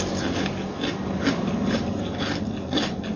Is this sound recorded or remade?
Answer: recorded